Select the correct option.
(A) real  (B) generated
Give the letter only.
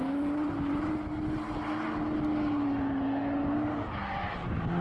A